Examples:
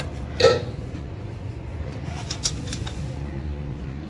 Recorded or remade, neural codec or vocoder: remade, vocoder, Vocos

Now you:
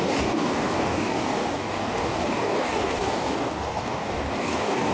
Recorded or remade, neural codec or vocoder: remade, codec, DAC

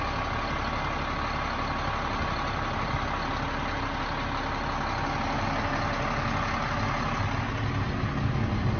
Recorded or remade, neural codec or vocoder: recorded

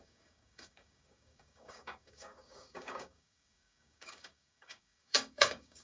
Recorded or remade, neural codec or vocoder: remade, codec, DAC